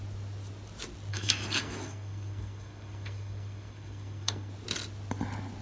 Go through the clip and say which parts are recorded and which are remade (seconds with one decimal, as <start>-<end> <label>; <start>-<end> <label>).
0.0-1.1 recorded; 1.1-4.5 remade; 4.5-5.6 recorded